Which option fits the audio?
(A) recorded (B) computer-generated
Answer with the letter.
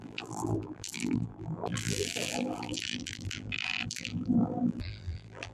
B